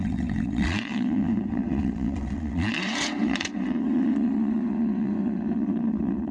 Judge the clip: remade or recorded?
remade